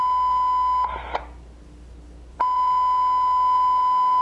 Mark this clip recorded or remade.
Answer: recorded